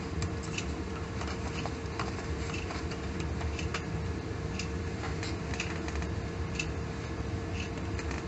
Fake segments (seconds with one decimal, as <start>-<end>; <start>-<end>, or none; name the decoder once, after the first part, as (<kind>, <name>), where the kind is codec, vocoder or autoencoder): none